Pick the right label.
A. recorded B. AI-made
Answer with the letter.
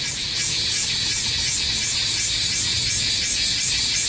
A